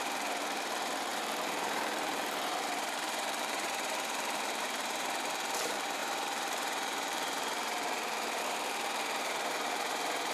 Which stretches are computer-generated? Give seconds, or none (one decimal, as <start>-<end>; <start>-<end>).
0.0-10.3